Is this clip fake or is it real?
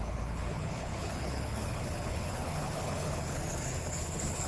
fake